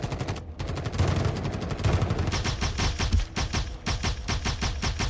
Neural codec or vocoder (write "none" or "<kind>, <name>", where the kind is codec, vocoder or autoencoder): none